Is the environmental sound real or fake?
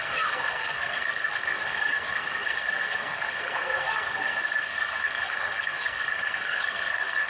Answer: fake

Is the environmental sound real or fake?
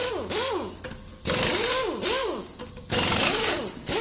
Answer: real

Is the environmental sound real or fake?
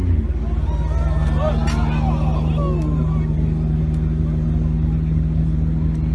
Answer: real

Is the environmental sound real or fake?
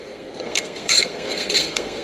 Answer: fake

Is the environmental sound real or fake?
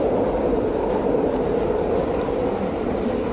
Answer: real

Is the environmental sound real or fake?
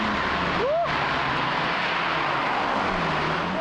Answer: real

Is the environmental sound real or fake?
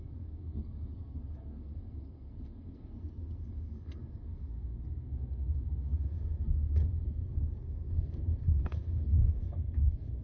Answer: fake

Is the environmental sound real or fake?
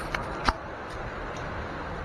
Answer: real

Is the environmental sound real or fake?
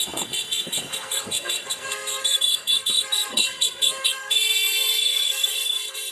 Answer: fake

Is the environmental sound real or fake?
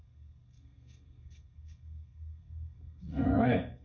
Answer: fake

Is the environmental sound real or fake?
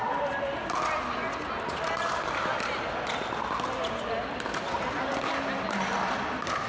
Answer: real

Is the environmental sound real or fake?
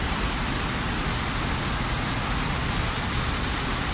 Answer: real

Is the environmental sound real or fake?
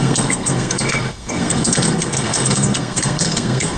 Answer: fake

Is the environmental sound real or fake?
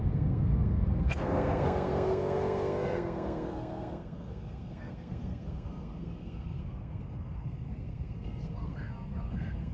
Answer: fake